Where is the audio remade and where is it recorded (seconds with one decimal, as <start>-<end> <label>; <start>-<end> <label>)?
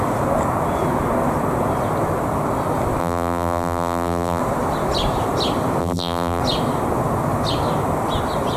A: 0.0-3.0 recorded; 3.0-4.4 remade; 4.4-5.8 recorded; 5.8-6.4 remade; 6.4-8.6 recorded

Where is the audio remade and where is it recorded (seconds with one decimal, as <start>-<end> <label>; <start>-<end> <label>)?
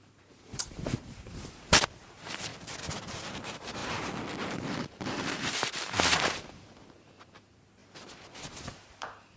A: 0.0-2.5 remade; 2.5-3.0 recorded; 3.0-3.8 remade; 3.8-4.5 recorded; 4.5-7.8 remade; 7.8-8.7 recorded; 8.7-9.4 remade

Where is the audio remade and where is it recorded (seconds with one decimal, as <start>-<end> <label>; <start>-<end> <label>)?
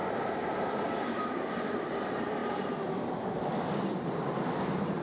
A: 0.0-5.0 recorded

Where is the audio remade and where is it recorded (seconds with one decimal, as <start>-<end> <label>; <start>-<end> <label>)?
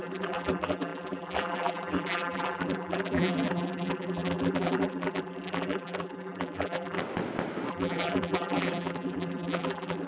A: 0.0-7.0 remade; 7.0-7.7 recorded; 7.7-10.1 remade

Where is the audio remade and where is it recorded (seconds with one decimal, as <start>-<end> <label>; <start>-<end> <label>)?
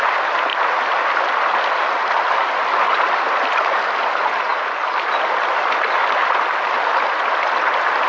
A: 0.0-8.1 recorded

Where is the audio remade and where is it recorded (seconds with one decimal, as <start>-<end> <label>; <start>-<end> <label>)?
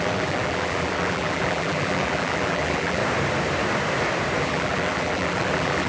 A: 0.0-3.0 remade; 3.0-4.4 recorded; 4.4-5.9 remade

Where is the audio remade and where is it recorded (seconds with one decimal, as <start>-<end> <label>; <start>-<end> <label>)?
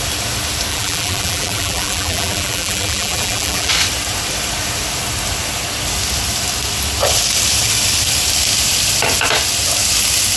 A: 0.0-0.7 recorded; 0.7-3.7 remade; 3.7-10.4 recorded